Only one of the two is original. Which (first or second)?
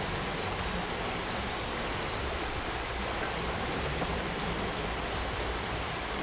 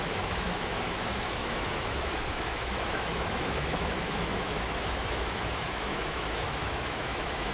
first